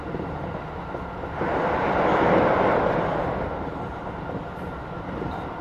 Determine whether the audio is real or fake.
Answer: real